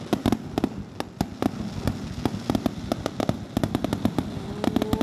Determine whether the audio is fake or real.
real